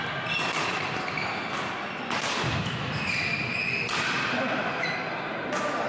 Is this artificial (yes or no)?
no